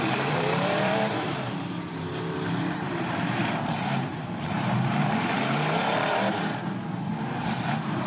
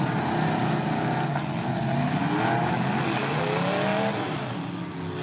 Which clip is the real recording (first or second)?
second